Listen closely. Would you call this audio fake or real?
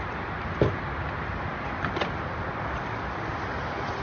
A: real